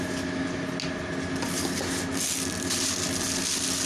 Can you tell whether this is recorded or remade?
recorded